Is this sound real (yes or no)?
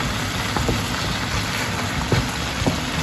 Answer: yes